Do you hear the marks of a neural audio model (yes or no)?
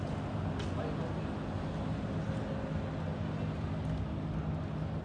no